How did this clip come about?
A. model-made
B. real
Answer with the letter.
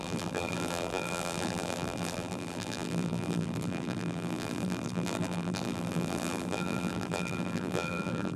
A